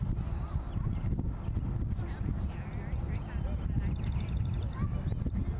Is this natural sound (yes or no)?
yes